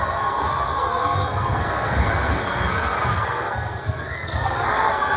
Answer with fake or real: fake